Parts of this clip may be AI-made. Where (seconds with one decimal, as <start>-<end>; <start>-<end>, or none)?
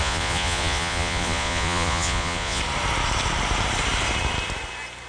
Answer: 0.0-2.6